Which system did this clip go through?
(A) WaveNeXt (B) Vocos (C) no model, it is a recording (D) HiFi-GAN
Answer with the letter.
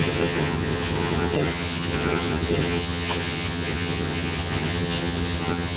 D